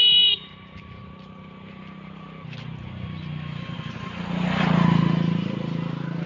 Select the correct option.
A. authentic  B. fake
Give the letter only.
A